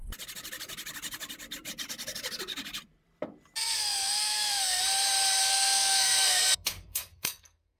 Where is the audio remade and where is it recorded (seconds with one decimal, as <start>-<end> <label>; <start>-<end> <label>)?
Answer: 0.0-3.6 recorded; 3.6-4.8 remade; 4.8-5.4 recorded; 5.4-7.8 remade